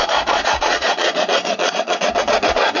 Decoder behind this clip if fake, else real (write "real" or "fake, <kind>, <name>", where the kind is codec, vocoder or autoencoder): fake, vocoder, Vocos